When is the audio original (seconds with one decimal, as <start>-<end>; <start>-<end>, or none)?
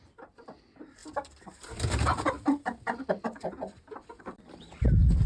none